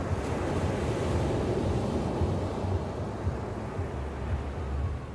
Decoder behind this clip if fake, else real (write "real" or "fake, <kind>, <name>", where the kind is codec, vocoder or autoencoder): real